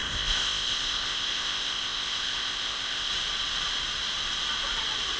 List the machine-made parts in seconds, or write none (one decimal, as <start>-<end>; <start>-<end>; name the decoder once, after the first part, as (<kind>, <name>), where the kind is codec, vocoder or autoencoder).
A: 0.0-3.1 (codec, ZipCodec)